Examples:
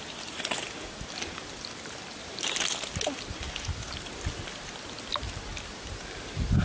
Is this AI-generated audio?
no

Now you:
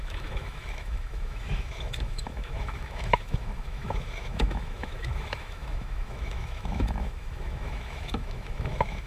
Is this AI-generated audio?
yes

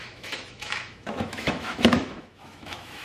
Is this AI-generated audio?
yes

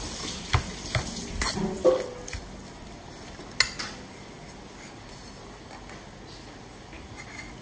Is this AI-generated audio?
no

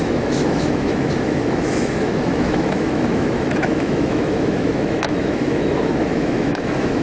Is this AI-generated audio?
yes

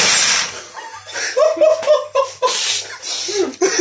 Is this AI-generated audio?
no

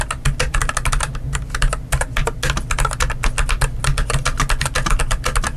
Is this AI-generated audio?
no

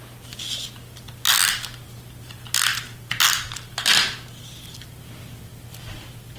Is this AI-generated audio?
no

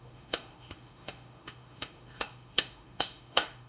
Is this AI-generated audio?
yes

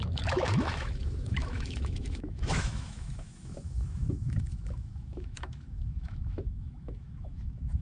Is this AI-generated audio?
yes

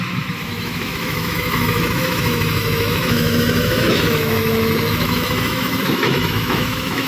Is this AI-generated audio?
yes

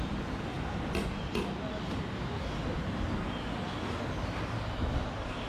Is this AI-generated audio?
no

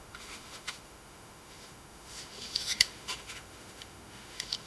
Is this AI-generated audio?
yes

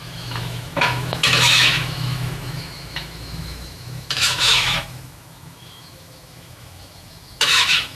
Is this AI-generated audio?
yes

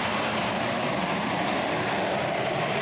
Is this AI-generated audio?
no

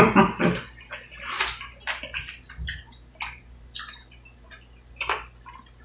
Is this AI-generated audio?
no